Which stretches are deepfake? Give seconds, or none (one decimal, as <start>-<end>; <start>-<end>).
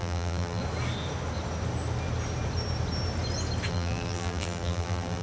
0.0-0.6; 3.7-5.2